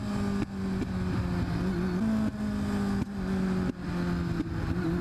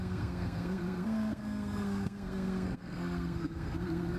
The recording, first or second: first